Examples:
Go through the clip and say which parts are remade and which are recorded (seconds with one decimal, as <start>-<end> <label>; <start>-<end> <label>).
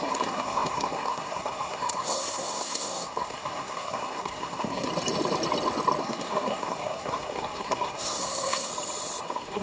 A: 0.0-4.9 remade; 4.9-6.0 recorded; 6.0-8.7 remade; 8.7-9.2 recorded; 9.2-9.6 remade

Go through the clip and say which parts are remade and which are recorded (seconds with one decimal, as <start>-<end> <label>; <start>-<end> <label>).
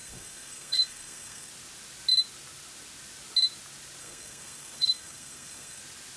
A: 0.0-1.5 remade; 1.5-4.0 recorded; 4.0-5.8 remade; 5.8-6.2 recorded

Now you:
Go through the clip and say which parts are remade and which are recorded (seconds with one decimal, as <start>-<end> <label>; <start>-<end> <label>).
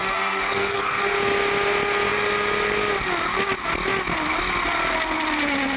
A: 0.0-1.0 remade; 1.0-5.8 recorded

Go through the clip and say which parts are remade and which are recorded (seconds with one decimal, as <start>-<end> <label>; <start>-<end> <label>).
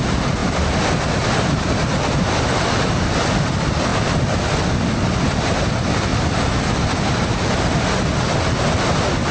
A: 0.0-9.3 recorded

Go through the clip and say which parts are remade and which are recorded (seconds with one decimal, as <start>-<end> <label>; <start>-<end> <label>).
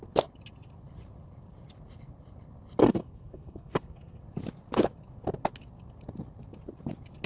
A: 0.0-2.8 recorded; 2.8-4.2 remade; 4.2-7.3 recorded